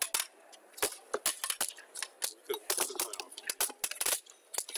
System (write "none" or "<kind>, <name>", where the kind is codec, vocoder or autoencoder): none